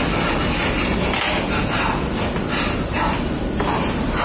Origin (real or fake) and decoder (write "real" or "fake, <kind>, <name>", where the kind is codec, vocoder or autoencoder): real